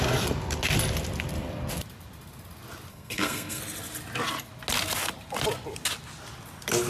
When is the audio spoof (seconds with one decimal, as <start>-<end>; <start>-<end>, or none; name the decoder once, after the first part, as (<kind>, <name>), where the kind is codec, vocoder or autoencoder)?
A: 2.9-3.6 (codec, SNAC)